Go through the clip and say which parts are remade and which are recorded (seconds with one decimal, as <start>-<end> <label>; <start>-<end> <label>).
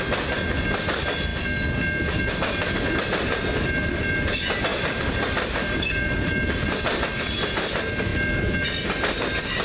0.0-3.6 recorded; 3.6-4.2 remade; 4.2-4.7 recorded; 4.7-7.0 remade; 7.0-9.6 recorded